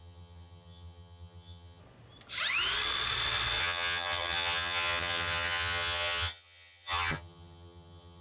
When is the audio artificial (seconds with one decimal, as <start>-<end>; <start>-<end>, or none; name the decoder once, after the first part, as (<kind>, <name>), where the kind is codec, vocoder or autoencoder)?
0.0-1.8 (vocoder, HiFi-GAN); 3.6-8.2